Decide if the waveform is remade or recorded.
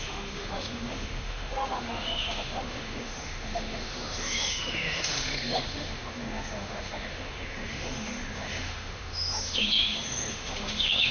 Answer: remade